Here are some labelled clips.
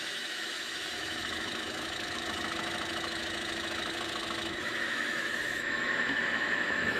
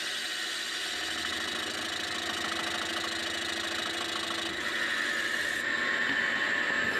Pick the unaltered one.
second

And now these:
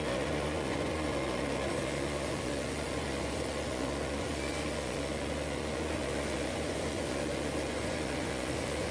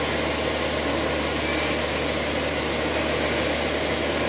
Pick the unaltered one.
second